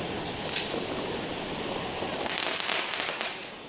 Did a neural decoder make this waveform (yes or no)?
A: no